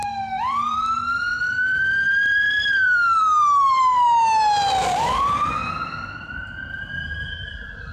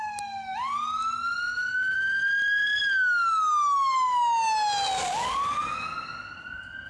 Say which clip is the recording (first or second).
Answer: second